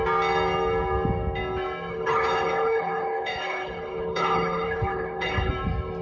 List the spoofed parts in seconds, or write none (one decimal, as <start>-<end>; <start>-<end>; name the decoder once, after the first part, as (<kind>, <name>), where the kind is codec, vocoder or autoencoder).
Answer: 1.9-5.5 (codec, HILCodec)